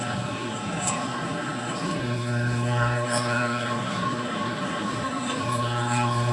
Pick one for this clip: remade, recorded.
remade